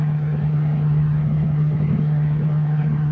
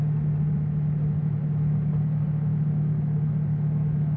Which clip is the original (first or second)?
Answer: second